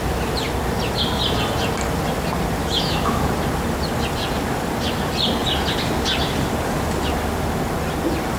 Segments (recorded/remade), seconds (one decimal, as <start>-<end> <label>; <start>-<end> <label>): 0.0-2.6 recorded; 2.6-3.3 remade; 3.3-8.4 recorded